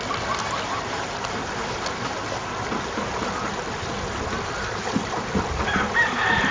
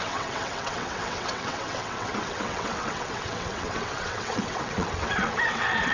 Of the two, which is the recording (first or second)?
first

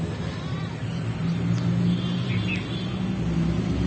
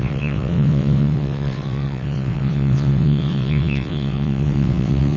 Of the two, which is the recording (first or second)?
first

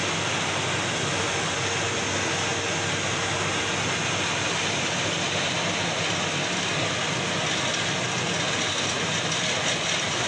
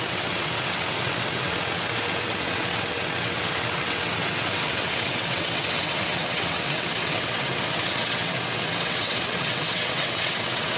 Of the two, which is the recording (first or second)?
first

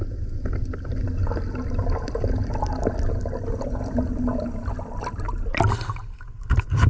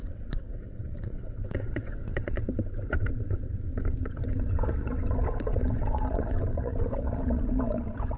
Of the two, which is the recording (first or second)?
first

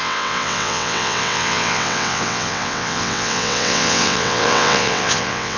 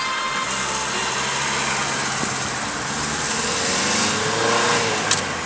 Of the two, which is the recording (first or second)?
second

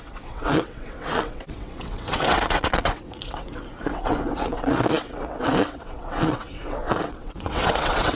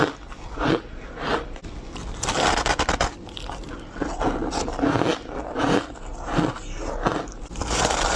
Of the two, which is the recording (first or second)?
second